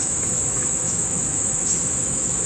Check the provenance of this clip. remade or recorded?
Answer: remade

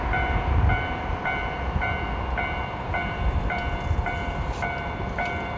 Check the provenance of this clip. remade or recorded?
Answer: remade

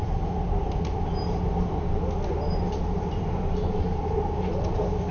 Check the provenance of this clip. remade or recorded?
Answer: recorded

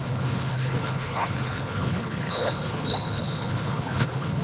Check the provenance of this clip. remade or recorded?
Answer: remade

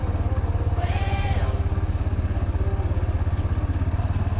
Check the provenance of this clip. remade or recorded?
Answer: recorded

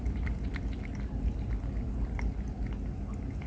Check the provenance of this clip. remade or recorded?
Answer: recorded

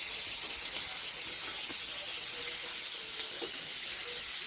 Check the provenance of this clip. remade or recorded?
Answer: recorded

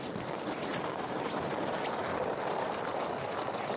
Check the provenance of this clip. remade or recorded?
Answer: recorded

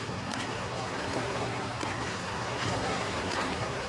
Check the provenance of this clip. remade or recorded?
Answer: remade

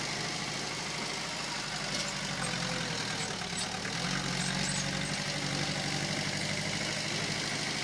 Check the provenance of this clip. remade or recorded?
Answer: recorded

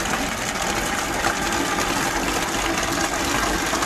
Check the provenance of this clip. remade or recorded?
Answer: recorded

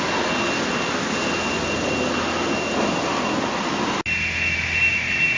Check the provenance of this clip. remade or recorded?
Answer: recorded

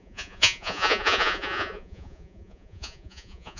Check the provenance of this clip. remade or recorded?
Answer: remade